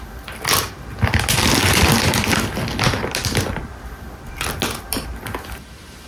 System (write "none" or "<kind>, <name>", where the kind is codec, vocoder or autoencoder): none